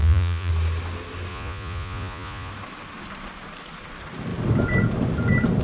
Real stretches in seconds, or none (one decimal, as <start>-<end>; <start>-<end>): 0.5-1.3; 2.5-5.6